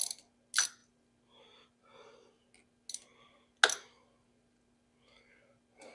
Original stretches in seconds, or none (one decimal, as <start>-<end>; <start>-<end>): 0.0-5.9